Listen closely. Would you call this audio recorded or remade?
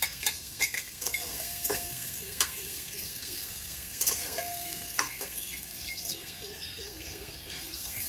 remade